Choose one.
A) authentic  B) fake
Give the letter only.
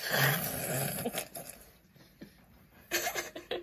A